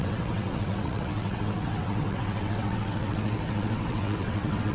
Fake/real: fake